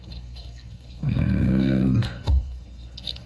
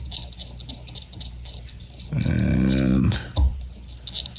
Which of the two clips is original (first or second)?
second